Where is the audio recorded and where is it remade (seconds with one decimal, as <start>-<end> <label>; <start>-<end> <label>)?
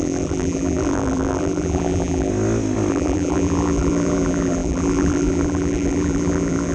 0.0-2.3 remade; 2.3-2.9 recorded; 2.9-6.7 remade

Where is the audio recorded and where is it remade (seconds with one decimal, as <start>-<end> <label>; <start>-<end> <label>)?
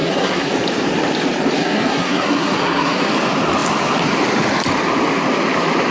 0.0-0.5 remade; 0.5-1.6 recorded; 1.6-3.1 remade; 3.1-5.9 recorded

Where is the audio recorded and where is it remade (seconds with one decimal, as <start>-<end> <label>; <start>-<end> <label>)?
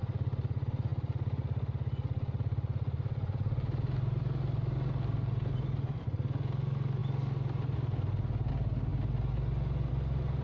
0.0-10.4 recorded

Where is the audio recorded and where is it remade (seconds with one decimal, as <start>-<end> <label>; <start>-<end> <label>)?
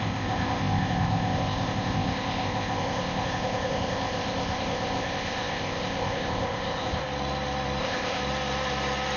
0.0-7.0 remade; 7.0-7.8 recorded; 7.8-8.2 remade; 8.2-9.2 recorded